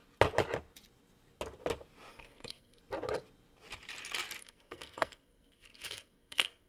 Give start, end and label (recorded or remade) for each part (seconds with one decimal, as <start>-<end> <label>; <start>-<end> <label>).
0.0-2.1 recorded; 2.1-2.8 remade; 2.8-4.4 recorded; 4.4-6.7 remade